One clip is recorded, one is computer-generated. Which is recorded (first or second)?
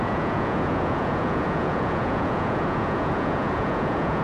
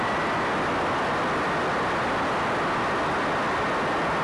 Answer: second